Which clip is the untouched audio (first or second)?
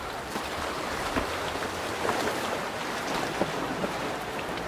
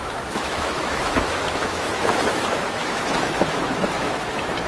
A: first